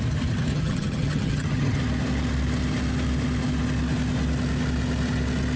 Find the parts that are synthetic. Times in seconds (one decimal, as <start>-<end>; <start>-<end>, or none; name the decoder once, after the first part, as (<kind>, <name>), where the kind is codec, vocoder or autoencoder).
0.5-1.8 (vocoder, HiFi-GAN)